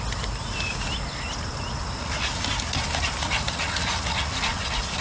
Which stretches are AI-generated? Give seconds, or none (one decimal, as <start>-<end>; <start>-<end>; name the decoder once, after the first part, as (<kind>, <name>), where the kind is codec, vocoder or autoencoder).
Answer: 2.0-2.5 (vocoder, Vocos); 3.2-5.0